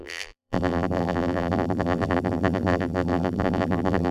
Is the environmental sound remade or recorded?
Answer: remade